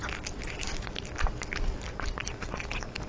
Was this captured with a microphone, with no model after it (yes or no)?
yes